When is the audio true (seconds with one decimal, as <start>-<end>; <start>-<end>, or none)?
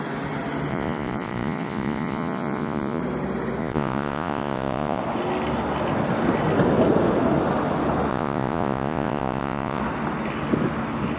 0.0-0.7; 3.0-3.6; 5.0-8.1; 9.8-11.2